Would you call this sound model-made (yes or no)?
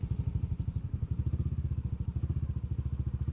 no